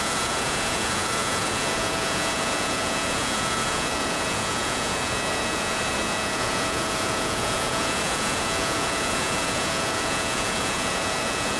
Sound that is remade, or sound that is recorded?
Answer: remade